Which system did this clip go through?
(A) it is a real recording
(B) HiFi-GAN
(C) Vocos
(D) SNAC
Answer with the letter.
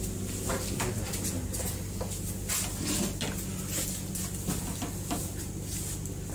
A